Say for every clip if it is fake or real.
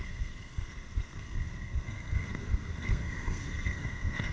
fake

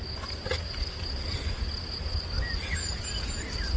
real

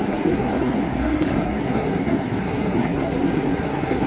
fake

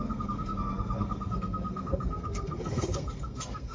fake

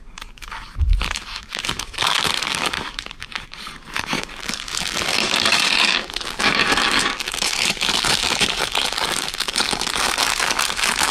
fake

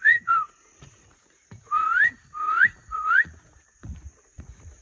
fake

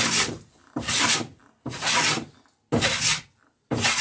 real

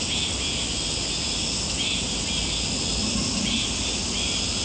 real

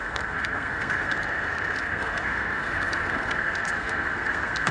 fake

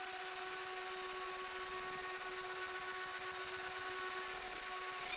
real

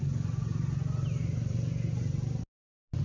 real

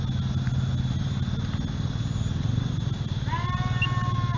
real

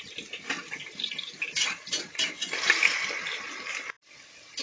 real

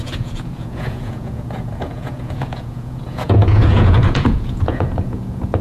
fake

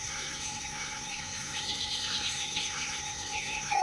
fake